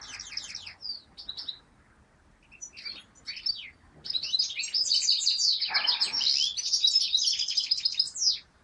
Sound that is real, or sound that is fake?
real